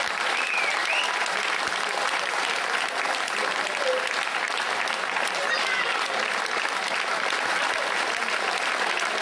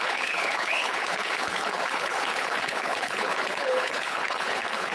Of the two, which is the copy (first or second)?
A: second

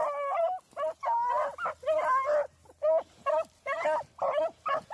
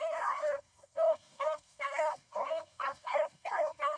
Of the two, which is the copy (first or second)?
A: second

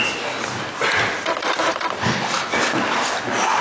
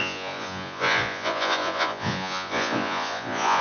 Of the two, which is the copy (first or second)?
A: second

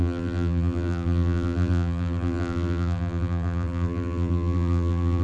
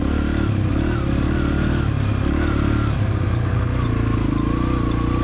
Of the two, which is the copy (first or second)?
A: first